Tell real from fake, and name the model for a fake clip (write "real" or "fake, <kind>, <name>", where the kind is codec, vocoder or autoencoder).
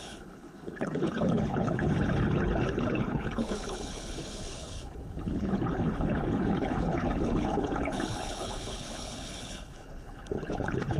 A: fake, codec, HILCodec